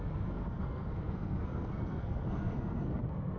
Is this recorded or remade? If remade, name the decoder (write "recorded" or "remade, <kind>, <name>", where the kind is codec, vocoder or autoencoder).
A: remade, codec, SNAC